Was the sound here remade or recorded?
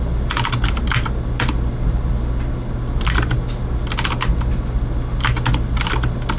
recorded